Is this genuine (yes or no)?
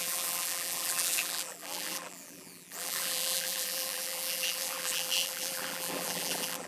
no